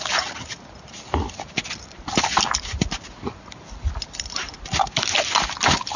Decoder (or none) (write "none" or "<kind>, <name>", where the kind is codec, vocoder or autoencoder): none